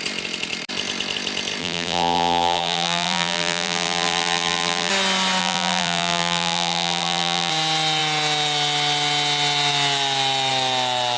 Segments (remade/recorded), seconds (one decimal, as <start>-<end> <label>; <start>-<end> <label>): 0.0-1.6 recorded; 1.6-4.9 remade; 4.9-5.4 recorded; 5.4-7.5 remade; 7.5-11.2 recorded